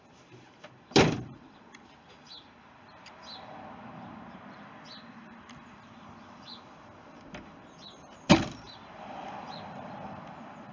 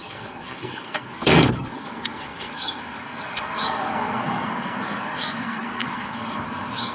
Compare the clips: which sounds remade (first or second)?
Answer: second